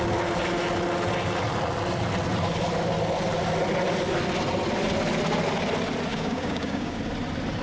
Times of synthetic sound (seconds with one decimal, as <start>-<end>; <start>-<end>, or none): 6.1-7.0